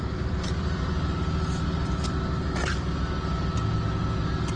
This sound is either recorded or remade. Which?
recorded